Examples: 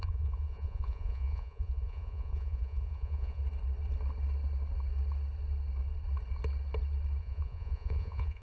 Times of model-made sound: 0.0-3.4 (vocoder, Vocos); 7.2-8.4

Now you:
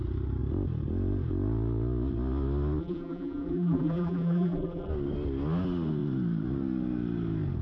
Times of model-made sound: 2.8-4.9 (vocoder, BigVGAN v2)

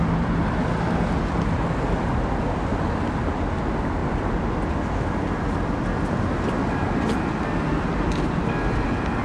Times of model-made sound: 4.0-4.7 (vocoder, BigVGAN v2)